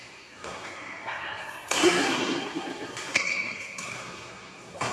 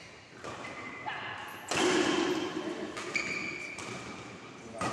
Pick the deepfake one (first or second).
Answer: first